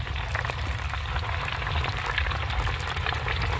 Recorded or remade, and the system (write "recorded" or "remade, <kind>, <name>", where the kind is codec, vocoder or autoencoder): recorded